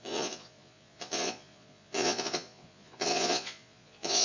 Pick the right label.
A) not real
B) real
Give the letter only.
A